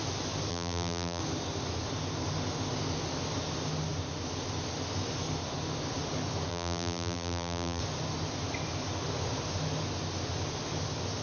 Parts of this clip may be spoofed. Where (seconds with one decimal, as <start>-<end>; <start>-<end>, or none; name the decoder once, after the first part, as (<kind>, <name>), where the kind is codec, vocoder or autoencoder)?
0.5-1.2 (vocoder, BigVGAN v2); 6.5-7.8